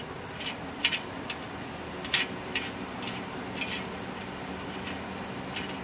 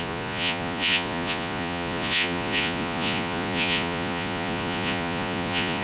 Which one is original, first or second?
first